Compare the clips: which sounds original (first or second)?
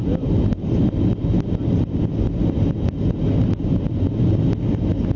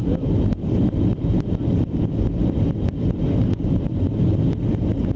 first